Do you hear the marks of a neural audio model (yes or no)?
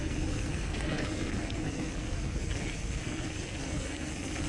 yes